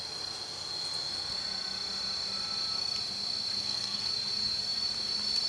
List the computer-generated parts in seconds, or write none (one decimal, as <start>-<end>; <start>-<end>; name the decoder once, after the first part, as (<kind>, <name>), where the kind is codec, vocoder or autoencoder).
3.6-4.1 (codec, SNAC)